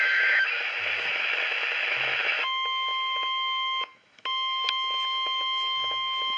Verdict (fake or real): fake